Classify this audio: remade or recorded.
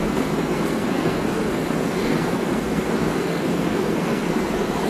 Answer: remade